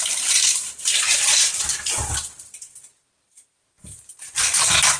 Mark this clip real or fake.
fake